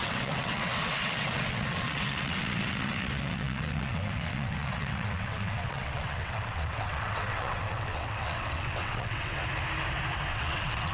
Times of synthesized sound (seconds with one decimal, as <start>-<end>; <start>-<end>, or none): 0.0-9.4; 10.3-10.9